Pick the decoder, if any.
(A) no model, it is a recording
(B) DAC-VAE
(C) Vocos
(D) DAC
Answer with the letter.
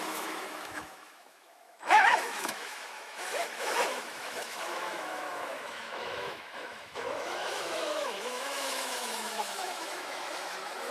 B